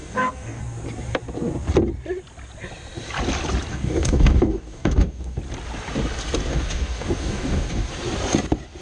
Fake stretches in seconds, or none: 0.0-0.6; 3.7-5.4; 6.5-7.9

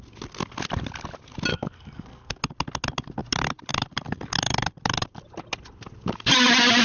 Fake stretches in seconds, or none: 1.5-2.4

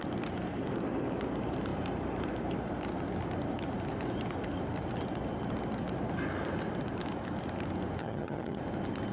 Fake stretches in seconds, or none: 8.0-8.6

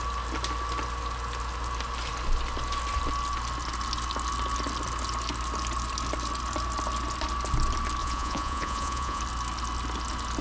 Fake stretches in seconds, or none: 8.0-9.2